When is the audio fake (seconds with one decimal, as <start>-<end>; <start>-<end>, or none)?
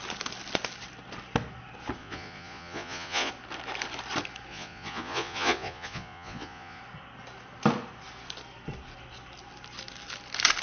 2.0-3.3; 4.5-6.8